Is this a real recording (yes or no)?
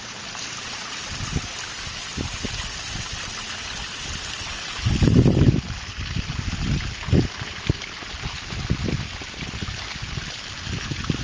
yes